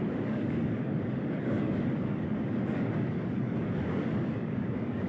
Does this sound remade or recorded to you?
remade